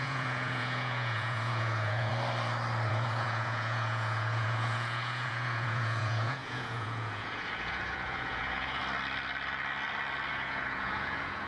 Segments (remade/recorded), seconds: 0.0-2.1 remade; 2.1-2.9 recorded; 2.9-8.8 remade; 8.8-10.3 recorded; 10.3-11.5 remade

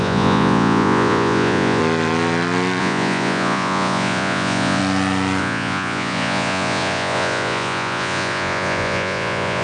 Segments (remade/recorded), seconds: 0.0-1.8 remade; 1.8-2.8 recorded; 2.8-4.8 remade; 4.8-5.4 recorded; 5.4-9.6 remade

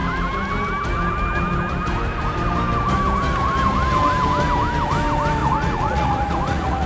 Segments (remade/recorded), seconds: 0.0-5.4 recorded; 5.4-6.9 remade

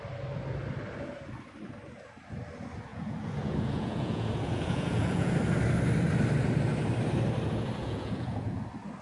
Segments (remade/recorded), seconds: 0.0-2.9 recorded; 2.9-5.3 remade; 5.3-7.8 recorded; 7.8-8.6 remade; 8.6-9.0 recorded

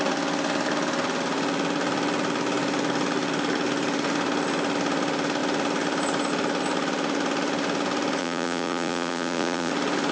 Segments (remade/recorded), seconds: 0.0-8.2 recorded; 8.2-9.7 remade; 9.7-10.1 recorded

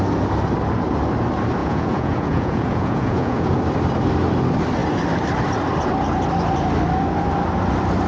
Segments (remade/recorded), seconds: 0.0-1.6 recorded; 1.6-3.6 remade; 3.6-8.1 recorded